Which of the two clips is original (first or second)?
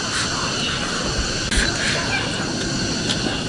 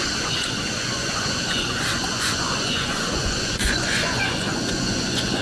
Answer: first